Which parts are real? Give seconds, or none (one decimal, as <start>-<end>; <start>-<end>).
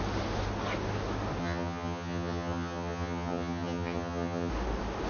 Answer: 0.0-1.4; 4.5-5.1